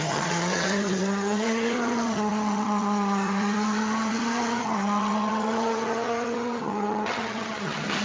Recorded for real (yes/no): no